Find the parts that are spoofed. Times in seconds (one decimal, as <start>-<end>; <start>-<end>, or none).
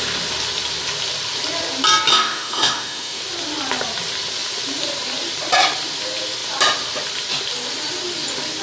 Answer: 2.1-3.2